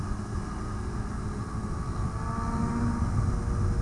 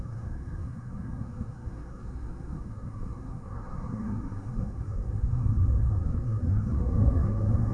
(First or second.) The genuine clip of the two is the first